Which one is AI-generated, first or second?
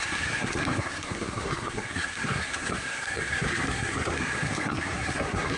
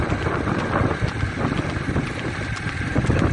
first